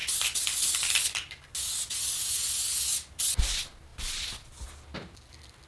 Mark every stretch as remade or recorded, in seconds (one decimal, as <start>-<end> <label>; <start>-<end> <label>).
0.0-5.7 recorded

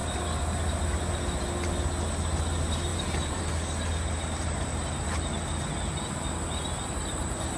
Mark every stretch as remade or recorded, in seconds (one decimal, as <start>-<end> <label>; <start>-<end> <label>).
0.0-2.9 recorded; 2.9-3.4 remade; 3.4-7.6 recorded

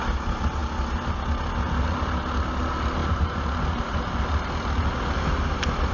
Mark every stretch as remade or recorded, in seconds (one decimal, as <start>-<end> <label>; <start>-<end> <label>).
0.0-3.0 recorded; 3.0-3.6 remade; 3.6-5.9 recorded

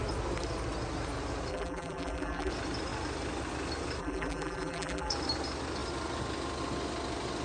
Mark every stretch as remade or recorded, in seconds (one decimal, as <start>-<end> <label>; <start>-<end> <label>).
0.0-1.5 recorded; 1.5-2.5 remade; 2.5-4.0 recorded; 4.0-5.1 remade; 5.1-7.4 recorded

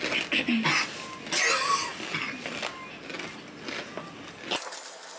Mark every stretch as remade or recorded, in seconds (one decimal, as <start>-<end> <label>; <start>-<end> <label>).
0.0-5.2 recorded

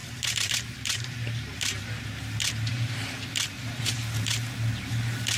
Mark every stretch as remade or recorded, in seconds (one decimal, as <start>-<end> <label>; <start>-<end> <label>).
0.0-1.8 remade; 1.8-5.4 recorded

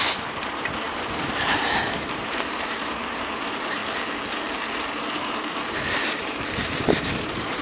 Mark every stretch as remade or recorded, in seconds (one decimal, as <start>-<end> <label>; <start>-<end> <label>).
0.0-3.8 remade; 3.8-4.7 recorded; 4.7-7.6 remade

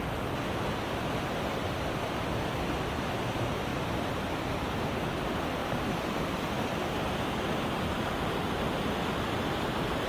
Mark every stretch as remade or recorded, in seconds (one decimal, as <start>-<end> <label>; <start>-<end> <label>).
0.0-5.6 recorded; 5.6-6.2 remade; 6.2-10.1 recorded